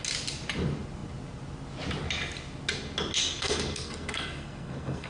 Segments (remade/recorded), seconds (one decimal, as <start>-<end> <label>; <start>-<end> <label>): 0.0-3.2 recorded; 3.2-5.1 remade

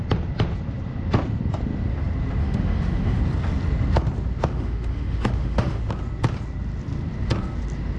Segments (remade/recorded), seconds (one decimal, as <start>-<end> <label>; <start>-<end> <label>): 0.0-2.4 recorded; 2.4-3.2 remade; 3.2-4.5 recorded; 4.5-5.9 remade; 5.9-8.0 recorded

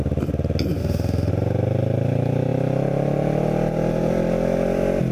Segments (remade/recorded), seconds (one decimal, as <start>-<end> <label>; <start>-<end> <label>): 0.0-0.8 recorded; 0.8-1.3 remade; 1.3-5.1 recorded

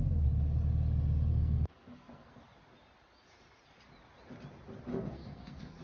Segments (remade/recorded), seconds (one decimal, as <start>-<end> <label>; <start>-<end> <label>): 0.0-1.3 recorded; 1.3-2.4 remade; 2.4-4.9 recorded; 4.9-5.8 remade